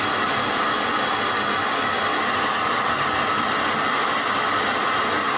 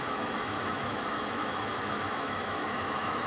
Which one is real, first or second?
first